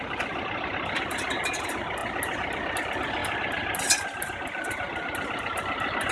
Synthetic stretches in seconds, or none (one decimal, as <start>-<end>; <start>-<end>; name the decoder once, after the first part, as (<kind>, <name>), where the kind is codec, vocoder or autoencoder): none